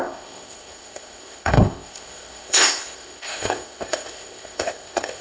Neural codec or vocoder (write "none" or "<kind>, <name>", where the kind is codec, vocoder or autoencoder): codec, ZipCodec